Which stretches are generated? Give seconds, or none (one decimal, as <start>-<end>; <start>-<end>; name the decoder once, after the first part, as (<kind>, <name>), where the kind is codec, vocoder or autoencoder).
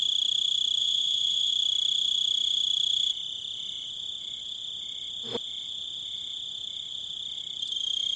0.8-1.5 (vocoder, WaveNeXt)